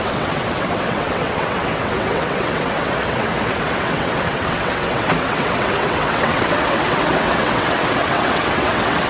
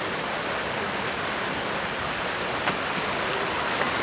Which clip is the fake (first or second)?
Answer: first